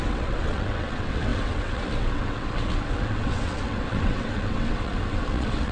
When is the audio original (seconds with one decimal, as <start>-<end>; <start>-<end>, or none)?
none